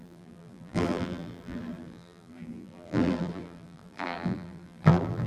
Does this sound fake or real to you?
fake